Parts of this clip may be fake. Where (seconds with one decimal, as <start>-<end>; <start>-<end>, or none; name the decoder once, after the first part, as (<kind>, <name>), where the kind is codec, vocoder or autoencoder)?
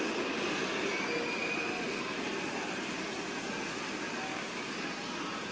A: 4.3-4.9 (codec, DAC)